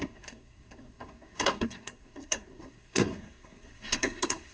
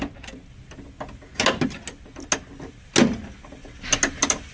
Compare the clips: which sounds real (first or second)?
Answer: second